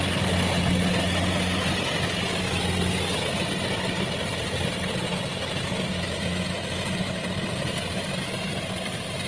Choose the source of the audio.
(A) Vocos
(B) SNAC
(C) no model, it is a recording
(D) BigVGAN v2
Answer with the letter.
C